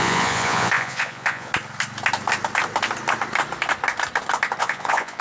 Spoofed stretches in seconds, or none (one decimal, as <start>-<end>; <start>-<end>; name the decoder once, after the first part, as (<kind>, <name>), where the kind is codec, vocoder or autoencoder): 0.0-1.5 (vocoder, Vocos); 4.6-5.2